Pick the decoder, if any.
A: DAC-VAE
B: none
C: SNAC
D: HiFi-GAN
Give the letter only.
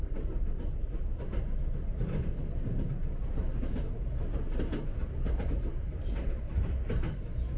B